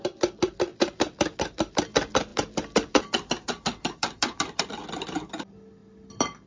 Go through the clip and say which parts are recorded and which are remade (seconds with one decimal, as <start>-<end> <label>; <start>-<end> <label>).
0.0-2.3 recorded; 2.3-4.6 remade; 4.6-6.5 recorded